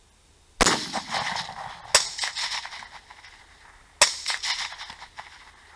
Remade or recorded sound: recorded